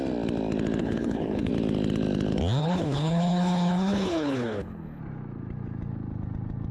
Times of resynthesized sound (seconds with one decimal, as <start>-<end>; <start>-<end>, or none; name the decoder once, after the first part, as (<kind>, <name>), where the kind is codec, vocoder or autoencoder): 0.8-1.5 (codec, HILCodec); 2.6-5.0